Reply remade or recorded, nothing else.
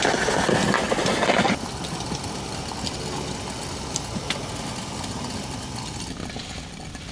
recorded